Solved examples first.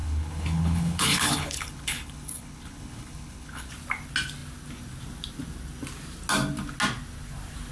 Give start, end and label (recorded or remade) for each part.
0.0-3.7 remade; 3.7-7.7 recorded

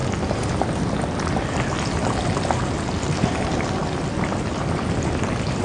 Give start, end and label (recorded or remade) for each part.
0.0-5.6 recorded

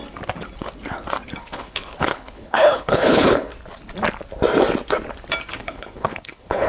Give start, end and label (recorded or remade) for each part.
0.0-1.4 recorded; 1.4-3.5 remade; 3.5-5.5 recorded; 5.5-6.7 remade

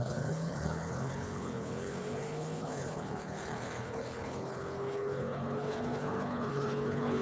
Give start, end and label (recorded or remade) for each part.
0.0-7.2 remade

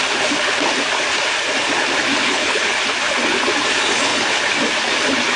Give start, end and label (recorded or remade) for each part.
0.0-2.2 recorded; 2.2-2.8 remade; 2.8-5.4 recorded

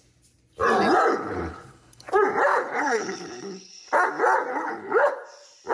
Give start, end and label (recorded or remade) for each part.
0.0-1.1 recorded; 1.1-2.1 remade; 2.1-2.5 recorded; 2.5-3.7 remade; 3.7-4.5 recorded; 4.5-5.1 remade; 5.1-5.7 recorded

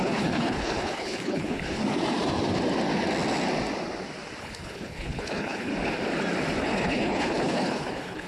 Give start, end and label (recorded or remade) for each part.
0.0-1.8 remade; 1.8-4.4 recorded; 4.4-5.7 remade; 5.7-6.6 recorded; 6.6-8.3 remade